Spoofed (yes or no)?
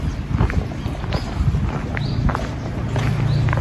no